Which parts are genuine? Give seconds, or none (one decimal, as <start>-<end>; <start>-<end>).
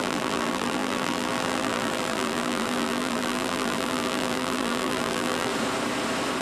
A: 5.5-6.4